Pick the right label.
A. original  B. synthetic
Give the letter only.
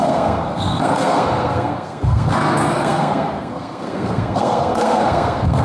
B